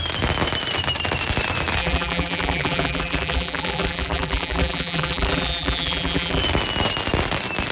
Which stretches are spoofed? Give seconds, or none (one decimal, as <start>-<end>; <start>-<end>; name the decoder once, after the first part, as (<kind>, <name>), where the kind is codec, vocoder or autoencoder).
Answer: 1.8-6.4 (vocoder, BigVGAN v2)